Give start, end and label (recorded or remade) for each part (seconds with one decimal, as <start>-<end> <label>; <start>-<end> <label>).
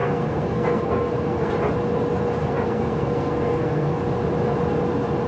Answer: 0.0-1.5 remade; 1.5-2.4 recorded; 2.4-4.0 remade; 4.0-5.3 recorded